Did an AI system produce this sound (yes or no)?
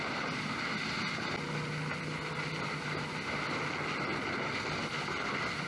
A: no